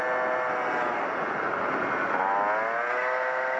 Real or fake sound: real